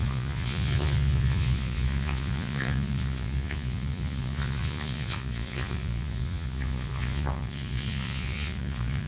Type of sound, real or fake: fake